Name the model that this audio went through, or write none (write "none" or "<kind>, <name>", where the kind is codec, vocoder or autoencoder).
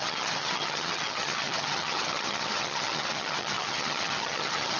vocoder, HiFi-GAN